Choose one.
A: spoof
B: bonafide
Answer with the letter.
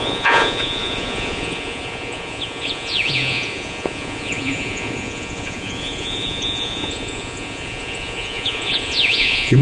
A